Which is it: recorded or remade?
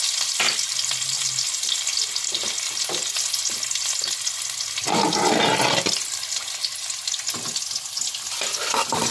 recorded